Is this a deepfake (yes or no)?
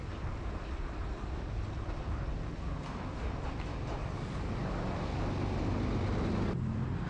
no